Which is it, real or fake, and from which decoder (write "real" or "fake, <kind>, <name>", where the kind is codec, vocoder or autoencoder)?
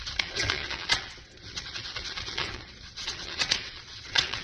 fake, vocoder, WaveNeXt